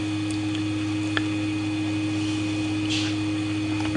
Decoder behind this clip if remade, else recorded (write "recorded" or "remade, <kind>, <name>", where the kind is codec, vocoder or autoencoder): recorded